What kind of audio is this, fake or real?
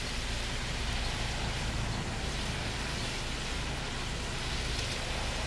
real